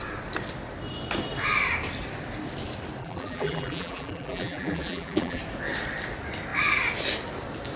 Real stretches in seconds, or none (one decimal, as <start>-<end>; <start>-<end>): 0.0-3.0; 5.4-7.8